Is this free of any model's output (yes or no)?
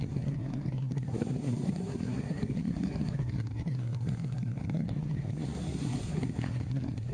no